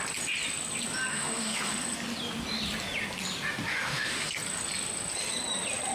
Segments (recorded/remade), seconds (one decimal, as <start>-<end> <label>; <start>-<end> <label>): 0.0-1.1 recorded; 1.1-1.7 remade; 1.7-3.7 recorded; 3.7-4.3 remade; 4.3-5.9 recorded